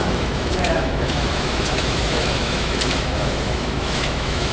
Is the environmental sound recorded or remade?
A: remade